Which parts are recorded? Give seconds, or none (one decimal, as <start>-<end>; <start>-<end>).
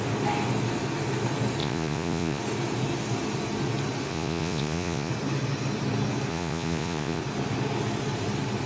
0.0-1.6; 2.4-4.1; 5.1-6.3; 7.2-8.7